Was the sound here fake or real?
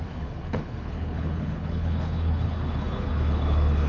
fake